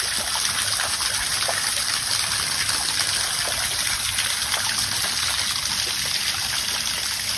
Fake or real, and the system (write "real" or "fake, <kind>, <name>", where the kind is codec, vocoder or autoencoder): real